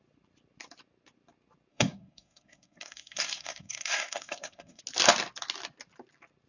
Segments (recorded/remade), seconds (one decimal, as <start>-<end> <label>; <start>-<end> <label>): 0.0-1.7 recorded; 1.7-4.8 remade; 4.8-6.5 recorded